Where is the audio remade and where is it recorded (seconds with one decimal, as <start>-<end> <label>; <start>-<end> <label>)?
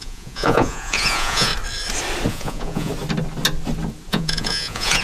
0.0-1.5 remade; 1.5-2.3 recorded; 2.3-2.9 remade; 2.9-4.1 recorded; 4.1-5.0 remade